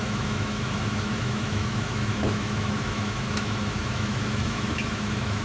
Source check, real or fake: fake